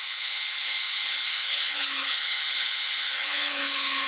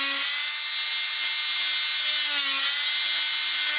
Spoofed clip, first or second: first